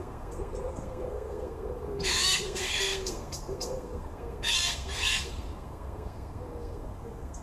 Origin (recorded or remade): remade